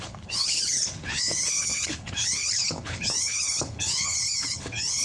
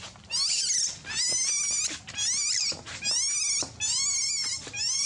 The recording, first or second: second